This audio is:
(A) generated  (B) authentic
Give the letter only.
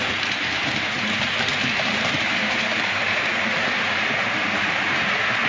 A